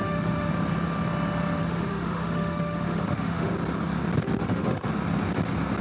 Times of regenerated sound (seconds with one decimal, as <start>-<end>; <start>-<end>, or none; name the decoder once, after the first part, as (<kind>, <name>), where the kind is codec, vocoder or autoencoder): 0.0-0.5 (autoencoder, DAC-VAE); 1.6-3.5; 4.4-4.9